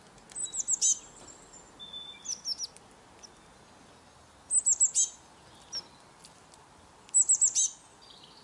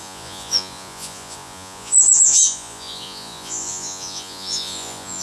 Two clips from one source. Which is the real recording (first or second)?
first